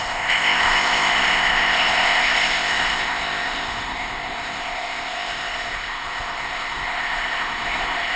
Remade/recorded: remade